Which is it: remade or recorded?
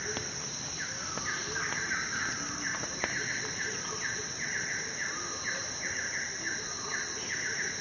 recorded